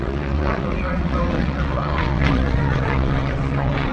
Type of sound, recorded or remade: remade